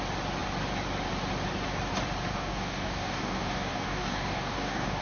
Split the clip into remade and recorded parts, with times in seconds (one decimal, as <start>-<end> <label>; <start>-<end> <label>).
0.0-2.3 recorded; 2.3-5.0 remade